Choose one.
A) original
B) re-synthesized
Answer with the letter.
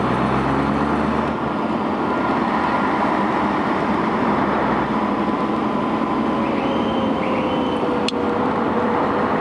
A